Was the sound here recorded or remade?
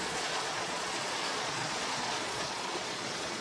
remade